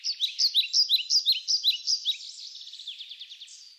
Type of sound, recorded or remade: recorded